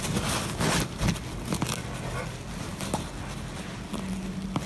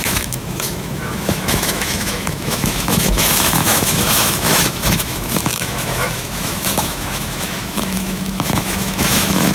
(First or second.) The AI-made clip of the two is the second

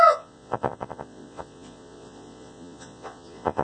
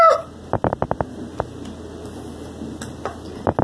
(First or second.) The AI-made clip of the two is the first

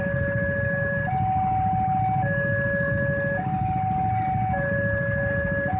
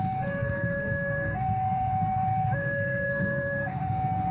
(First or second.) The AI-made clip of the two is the second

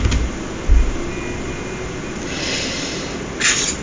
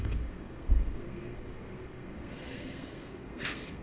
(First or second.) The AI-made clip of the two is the second